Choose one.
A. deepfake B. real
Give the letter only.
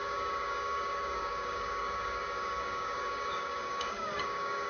A